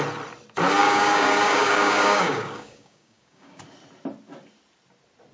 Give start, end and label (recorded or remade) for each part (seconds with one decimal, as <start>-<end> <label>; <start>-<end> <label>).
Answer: 0.0-0.8 recorded; 0.8-3.6 remade; 3.6-5.3 recorded